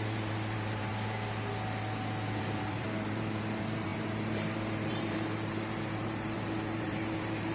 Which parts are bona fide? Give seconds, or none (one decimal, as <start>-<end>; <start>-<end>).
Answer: 0.9-2.4